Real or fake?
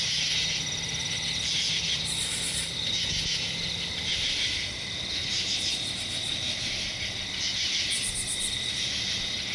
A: real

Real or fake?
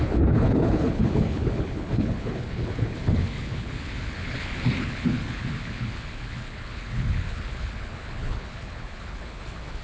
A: fake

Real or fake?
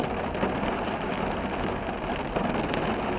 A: real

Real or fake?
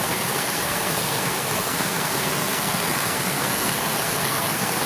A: fake